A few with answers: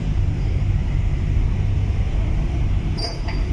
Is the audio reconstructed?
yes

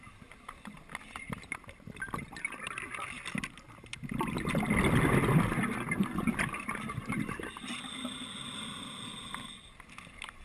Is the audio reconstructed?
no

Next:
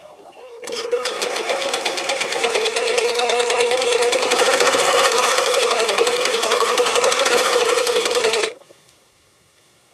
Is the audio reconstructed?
yes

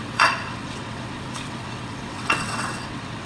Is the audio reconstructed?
yes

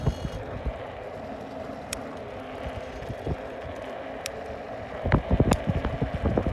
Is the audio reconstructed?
no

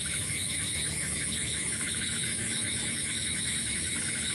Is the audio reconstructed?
yes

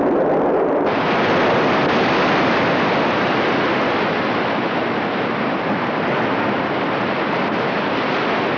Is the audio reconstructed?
no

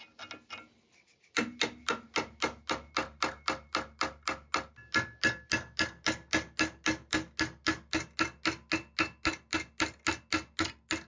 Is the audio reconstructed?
no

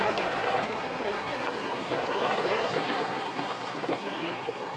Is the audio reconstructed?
yes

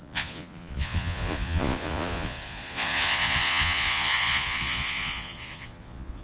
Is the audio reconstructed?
yes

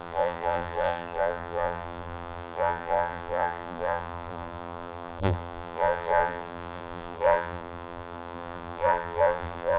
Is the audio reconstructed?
yes